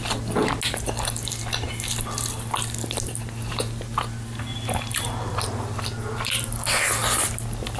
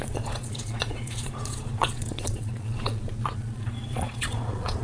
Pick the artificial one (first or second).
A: second